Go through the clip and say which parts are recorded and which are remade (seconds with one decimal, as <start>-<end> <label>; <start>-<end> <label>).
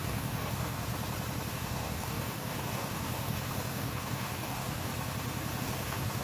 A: 0.0-0.9 remade; 0.9-1.5 recorded; 1.5-4.9 remade; 4.9-5.6 recorded; 5.6-6.2 remade